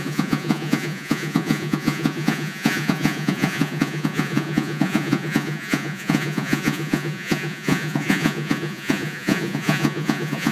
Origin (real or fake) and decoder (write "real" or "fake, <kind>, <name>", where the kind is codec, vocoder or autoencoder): fake, vocoder, Vocos